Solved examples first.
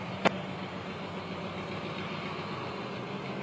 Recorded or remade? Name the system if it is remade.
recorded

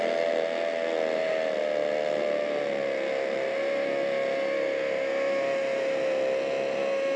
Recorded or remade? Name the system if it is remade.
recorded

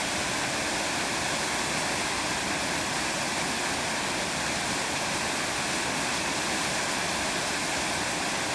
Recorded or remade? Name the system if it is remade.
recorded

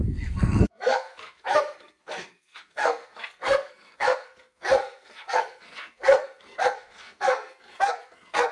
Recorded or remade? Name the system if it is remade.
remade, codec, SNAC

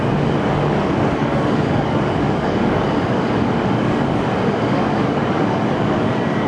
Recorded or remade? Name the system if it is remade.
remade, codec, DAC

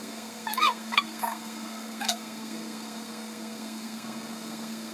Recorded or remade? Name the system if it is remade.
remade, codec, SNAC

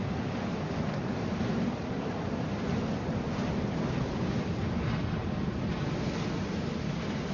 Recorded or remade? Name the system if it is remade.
recorded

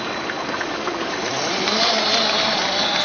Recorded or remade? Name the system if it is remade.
remade, vocoder, BigVGAN v2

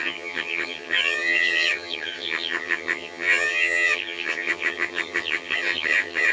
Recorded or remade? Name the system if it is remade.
remade, vocoder, HiFi-GAN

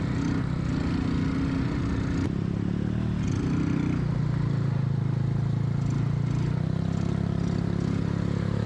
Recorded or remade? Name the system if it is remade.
recorded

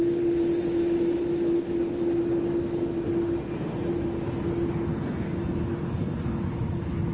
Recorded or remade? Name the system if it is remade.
recorded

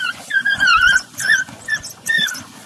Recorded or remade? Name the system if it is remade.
remade, vocoder, Vocos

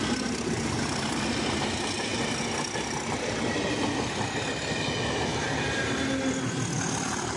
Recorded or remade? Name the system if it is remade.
recorded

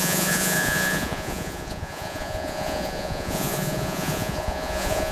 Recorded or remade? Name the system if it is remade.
remade, vocoder, Vocos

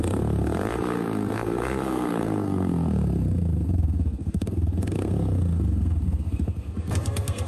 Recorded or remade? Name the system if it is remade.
remade, codec, SNAC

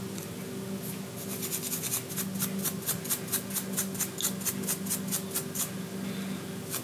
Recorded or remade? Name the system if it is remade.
recorded